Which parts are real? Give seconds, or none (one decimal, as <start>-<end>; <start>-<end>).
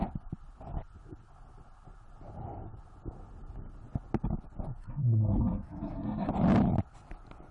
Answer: 0.0-4.8; 6.3-7.5